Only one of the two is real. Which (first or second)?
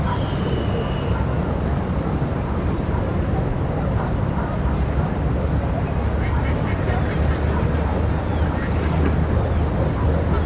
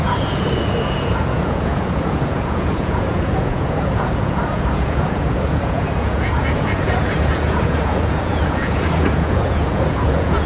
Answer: first